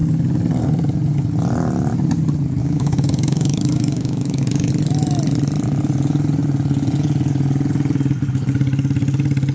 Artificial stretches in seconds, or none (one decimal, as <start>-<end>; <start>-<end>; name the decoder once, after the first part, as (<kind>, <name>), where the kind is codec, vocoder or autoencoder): 2.6-4.7 (codec, DAC)